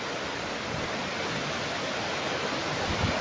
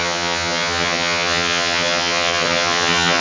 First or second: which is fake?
second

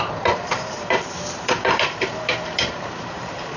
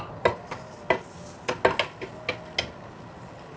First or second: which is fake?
first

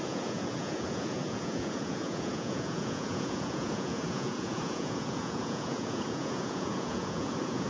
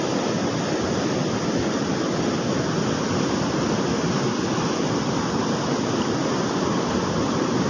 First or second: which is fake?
first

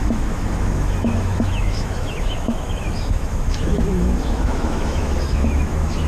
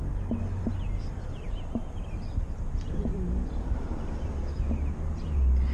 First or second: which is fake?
first